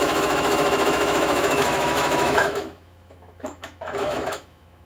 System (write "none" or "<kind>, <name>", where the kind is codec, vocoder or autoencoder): autoencoder, DAC-VAE